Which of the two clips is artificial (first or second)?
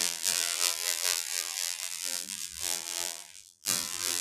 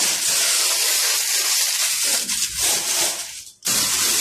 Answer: first